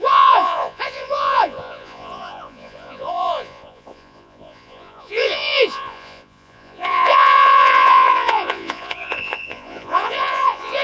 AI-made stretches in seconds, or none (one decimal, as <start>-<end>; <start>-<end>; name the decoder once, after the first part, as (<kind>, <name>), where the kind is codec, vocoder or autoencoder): 0.0-10.8 (vocoder, Vocos)